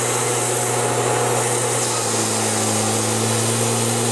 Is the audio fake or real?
real